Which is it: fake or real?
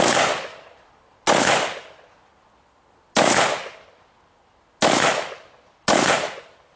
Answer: real